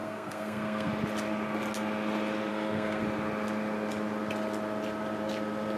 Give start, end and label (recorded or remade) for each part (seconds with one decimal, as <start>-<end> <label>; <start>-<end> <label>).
0.0-0.9 remade; 0.9-2.5 recorded; 2.5-3.0 remade; 3.0-5.8 recorded